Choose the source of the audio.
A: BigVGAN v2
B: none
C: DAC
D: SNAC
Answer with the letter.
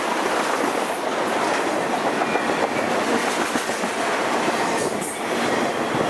B